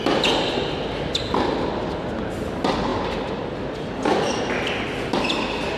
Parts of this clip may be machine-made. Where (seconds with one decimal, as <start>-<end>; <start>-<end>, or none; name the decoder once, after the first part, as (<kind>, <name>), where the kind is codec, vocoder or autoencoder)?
none